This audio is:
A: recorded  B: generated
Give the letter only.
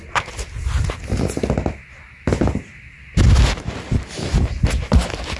A